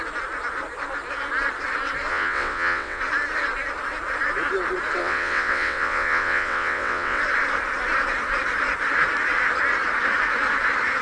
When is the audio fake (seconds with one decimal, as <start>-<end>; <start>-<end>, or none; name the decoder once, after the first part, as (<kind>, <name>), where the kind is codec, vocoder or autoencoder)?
2.1-3.0 (vocoder, WaveNeXt); 5.0-7.2

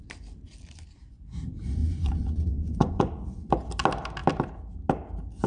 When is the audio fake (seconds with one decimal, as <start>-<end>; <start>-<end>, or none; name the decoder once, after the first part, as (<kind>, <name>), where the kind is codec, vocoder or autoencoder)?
1.8-3.5 (vocoder, Vocos)

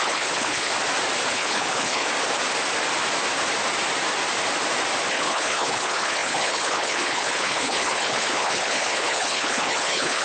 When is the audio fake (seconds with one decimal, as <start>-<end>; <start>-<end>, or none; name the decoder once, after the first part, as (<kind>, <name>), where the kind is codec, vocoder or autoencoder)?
0.0-0.7 (codec, HILCodec); 1.3-2.1; 5.1-10.2

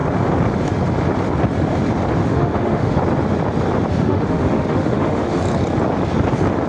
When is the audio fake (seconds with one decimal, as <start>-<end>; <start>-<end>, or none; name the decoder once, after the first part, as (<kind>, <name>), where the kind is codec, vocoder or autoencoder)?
2.2-3.0 (autoencoder, DAC-VAE); 3.9-5.4

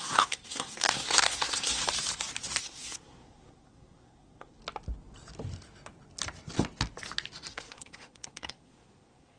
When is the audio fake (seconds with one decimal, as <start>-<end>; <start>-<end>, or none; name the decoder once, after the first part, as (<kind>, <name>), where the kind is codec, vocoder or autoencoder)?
0.0-1.8 (codec, SNAC); 2.6-4.6; 7.5-9.4

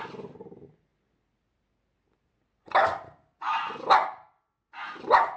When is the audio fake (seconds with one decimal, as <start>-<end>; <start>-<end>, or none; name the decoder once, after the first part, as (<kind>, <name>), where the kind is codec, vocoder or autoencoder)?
none

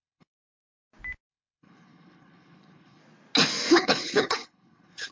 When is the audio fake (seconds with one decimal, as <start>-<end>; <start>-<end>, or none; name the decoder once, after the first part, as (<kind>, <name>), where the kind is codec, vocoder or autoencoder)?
0.0-0.7 (codec, HILCodec); 1.3-3.0; 3.7-5.1

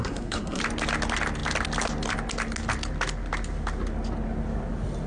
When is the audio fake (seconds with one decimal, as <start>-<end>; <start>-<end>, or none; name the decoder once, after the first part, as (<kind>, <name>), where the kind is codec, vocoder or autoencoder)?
0.0-0.6 (codec, SNAC)